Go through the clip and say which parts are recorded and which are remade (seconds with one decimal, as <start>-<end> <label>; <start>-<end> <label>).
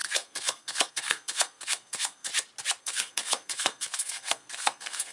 0.0-2.3 remade; 2.3-2.8 recorded; 2.8-5.1 remade